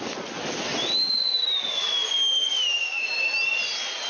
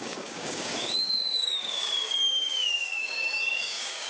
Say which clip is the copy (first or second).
second